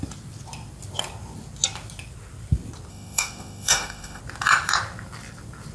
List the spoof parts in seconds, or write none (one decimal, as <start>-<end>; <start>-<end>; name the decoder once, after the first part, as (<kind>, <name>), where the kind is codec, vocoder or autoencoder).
2.9-4.2 (autoencoder, DAC-VAE)